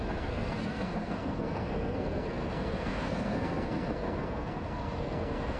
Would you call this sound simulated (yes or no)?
yes